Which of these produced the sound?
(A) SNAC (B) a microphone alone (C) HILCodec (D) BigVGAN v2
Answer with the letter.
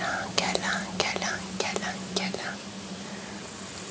B